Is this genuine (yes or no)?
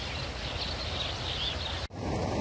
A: yes